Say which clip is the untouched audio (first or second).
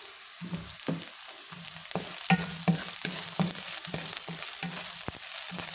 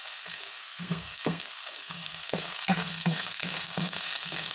first